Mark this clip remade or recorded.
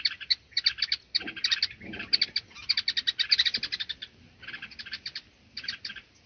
recorded